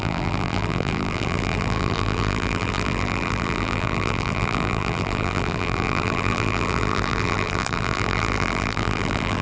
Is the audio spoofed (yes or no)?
yes